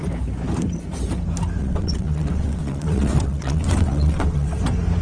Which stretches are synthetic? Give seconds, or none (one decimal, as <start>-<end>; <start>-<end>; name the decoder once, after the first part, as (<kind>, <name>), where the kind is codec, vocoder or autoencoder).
1.6-4.6 (vocoder, WaveNeXt)